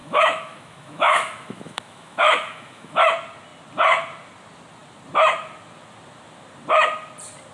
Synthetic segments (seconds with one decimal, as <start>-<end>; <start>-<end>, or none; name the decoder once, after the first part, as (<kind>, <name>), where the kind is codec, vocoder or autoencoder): 0.0-3.1 (autoencoder, DAC-VAE)